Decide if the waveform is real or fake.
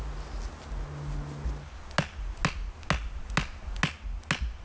real